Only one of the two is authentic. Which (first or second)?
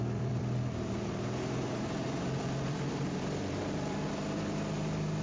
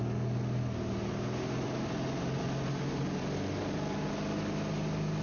second